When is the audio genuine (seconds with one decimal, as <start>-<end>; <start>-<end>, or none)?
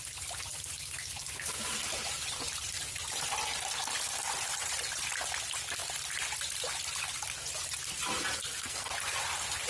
0.0-8.4; 8.9-9.7